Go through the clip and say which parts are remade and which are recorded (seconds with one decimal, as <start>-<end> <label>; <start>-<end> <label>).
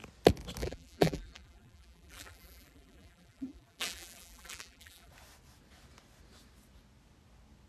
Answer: 0.0-0.6 recorded; 0.6-5.1 remade; 5.1-7.7 recorded